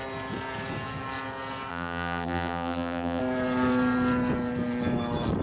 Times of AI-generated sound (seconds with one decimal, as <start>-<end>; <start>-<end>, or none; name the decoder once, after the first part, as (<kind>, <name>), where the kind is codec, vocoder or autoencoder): 1.7-3.2 (vocoder, BigVGAN v2)